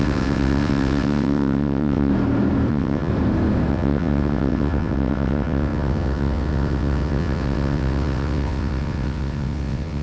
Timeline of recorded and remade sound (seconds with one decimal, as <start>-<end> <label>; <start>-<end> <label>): 0.0-2.1 remade; 2.1-2.7 recorded; 2.7-3.1 remade; 3.1-3.7 recorded; 3.7-10.0 remade